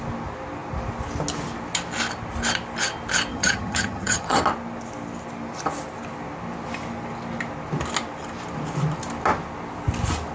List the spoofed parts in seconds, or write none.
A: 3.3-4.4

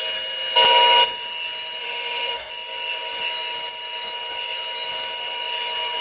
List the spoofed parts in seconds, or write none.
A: 1.8-2.5

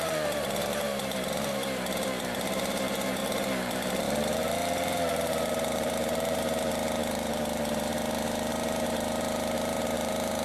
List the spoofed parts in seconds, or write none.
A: 0.0-10.4

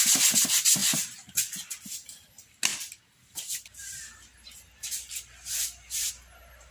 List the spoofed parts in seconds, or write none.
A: none

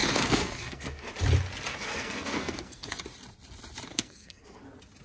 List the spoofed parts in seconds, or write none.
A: 0.0-1.1; 1.7-2.9; 3.9-4.6

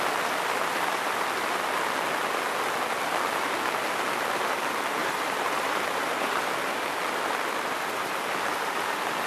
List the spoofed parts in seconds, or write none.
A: 5.0-6.5

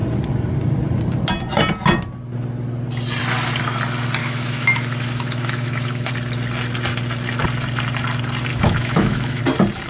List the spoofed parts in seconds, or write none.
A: 4.2-6.1; 8.5-9.4

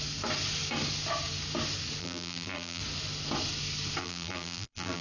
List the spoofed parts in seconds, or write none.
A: 2.0-2.8; 4.0-5.0